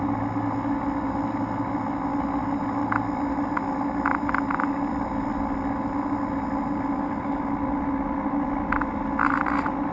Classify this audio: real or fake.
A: real